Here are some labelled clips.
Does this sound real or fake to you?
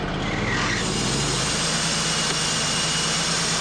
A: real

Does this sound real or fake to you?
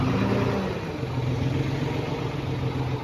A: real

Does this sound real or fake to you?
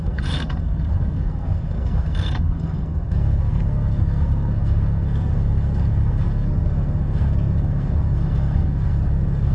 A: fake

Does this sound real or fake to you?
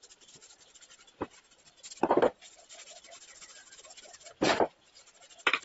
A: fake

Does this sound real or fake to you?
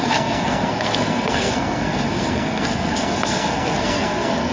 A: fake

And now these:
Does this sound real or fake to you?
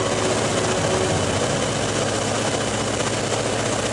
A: real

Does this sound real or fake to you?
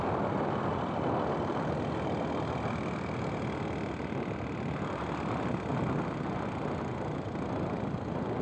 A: real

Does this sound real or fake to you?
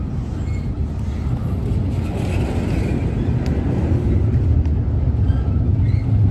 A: real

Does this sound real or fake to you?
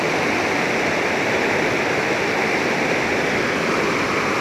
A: real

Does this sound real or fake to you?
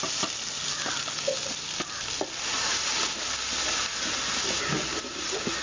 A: real